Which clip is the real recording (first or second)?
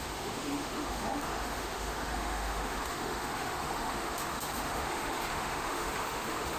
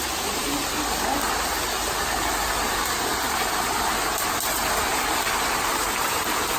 second